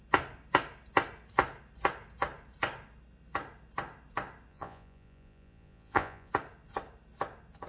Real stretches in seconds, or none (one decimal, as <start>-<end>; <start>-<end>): 0.0-4.5; 6.3-7.7